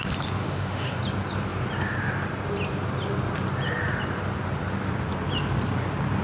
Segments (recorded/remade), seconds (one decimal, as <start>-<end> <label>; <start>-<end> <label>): 0.0-0.4 recorded; 0.4-1.0 remade; 1.0-6.2 recorded